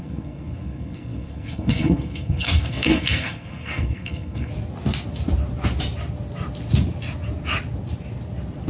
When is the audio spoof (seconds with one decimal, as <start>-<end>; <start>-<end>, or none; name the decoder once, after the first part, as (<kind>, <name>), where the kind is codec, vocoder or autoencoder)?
0.0-4.5 (codec, SNAC)

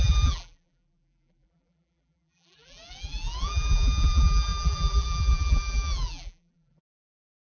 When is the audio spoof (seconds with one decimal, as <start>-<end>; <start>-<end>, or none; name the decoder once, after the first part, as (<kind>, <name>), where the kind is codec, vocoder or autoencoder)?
0.0-7.5 (vocoder, BigVGAN v2)

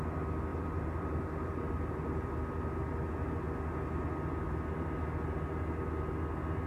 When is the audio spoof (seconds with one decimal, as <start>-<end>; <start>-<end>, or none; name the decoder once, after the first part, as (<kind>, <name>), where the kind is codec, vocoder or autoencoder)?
0.5-2.3 (vocoder, BigVGAN v2)

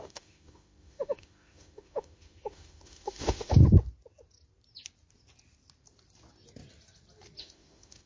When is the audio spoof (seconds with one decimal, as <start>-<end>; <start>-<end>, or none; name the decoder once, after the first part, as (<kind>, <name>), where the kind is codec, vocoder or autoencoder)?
0.0-3.6 (autoencoder, DAC-VAE); 7.4-8.1

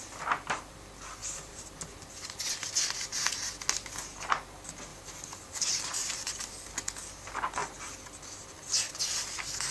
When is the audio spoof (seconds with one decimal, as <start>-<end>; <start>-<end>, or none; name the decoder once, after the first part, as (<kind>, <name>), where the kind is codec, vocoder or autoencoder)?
1.2-1.9 (vocoder, BigVGAN v2); 4.9-6.3

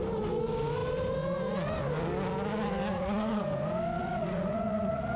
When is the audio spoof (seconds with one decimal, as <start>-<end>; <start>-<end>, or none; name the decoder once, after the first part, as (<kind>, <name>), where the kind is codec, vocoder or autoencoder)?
2.9-3.4 (vocoder, Vocos); 4.0-5.2